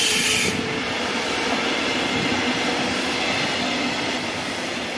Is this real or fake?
real